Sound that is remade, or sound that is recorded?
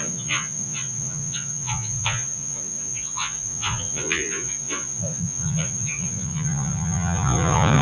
remade